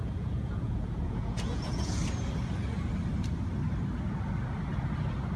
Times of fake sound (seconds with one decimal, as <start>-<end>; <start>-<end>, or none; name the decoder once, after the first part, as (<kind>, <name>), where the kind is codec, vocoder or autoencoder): 0.0-2.0 (vocoder, Vocos)